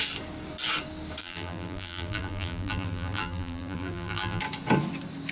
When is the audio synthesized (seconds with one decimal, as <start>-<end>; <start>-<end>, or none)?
1.2-4.4